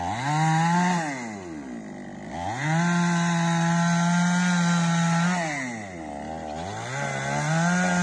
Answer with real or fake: real